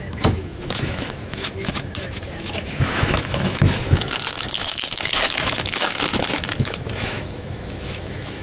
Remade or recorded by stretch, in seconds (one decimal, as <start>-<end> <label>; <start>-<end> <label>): 0.0-8.4 remade